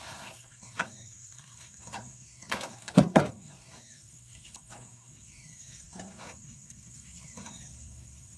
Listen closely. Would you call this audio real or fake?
fake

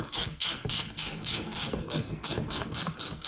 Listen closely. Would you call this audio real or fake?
fake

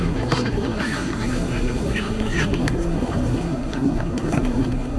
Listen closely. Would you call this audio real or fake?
fake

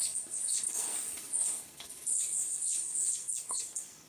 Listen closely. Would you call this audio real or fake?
fake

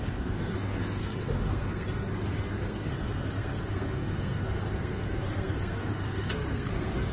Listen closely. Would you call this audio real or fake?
fake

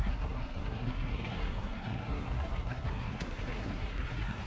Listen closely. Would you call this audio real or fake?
fake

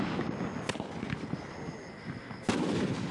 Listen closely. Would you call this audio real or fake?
real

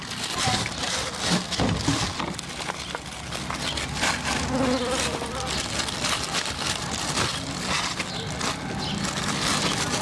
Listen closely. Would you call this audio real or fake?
real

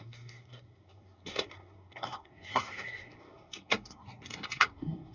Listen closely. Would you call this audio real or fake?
fake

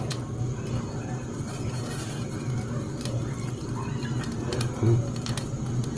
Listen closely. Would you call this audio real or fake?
real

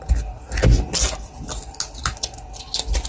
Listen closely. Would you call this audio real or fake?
real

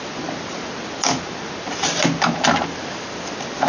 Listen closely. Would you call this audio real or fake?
real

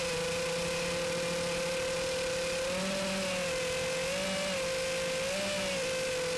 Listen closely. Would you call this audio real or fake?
real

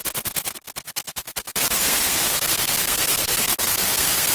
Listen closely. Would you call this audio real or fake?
fake